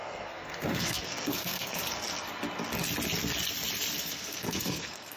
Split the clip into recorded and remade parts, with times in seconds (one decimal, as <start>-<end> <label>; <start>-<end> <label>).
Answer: 0.0-1.8 remade; 1.8-4.0 recorded; 4.0-5.2 remade